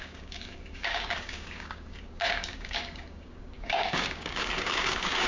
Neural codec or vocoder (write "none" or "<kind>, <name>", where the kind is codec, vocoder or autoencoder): codec, DAC